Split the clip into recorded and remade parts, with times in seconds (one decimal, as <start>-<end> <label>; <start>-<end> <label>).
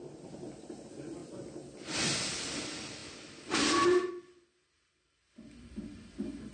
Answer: 0.0-6.5 recorded